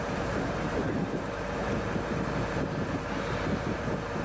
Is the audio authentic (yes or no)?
no